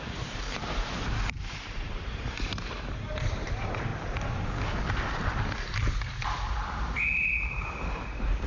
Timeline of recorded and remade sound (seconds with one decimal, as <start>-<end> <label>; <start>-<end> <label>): 0.0-3.9 remade; 3.9-8.1 recorded; 8.1-8.5 remade